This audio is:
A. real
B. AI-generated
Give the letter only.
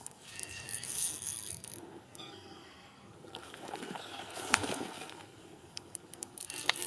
B